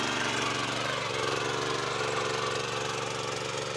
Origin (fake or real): real